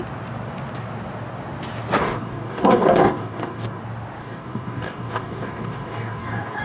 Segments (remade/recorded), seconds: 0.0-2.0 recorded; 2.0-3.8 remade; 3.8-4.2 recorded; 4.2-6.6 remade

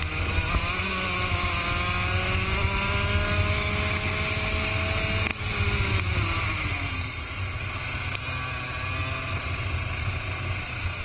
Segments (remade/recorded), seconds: 0.0-11.0 recorded

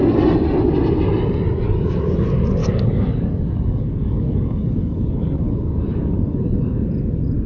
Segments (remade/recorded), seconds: 0.0-2.6 recorded; 2.6-6.9 remade; 6.9-7.5 recorded

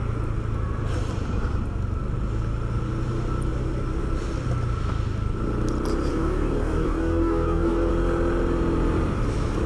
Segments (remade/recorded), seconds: 0.0-6.1 recorded; 6.1-7.9 remade; 7.9-9.7 recorded

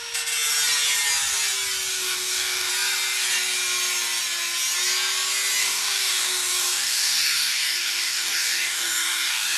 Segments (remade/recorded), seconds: 0.0-1.9 recorded; 1.9-2.7 remade; 2.7-5.6 recorded; 5.6-9.6 remade

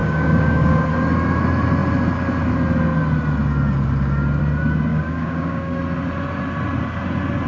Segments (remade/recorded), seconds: 0.0-0.8 remade; 0.8-4.9 recorded; 4.9-5.8 remade; 5.8-7.5 recorded

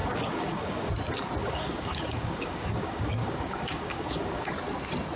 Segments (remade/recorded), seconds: 0.0-0.9 remade; 0.9-1.4 recorded; 1.4-4.5 remade; 4.5-5.2 recorded